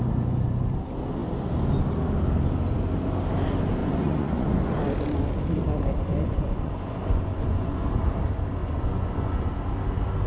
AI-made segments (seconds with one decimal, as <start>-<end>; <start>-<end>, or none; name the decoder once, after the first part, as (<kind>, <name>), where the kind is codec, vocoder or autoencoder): 3.8-4.7 (vocoder, Vocos); 6.1-8.0; 8.6-9.5